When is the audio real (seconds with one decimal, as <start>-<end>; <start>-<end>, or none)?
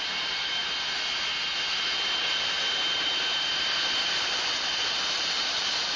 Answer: 0.6-4.2